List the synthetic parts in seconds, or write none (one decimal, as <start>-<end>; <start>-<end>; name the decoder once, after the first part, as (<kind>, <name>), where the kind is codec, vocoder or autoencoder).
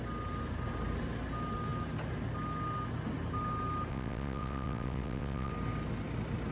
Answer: 3.9-5.5 (vocoder, WaveNeXt)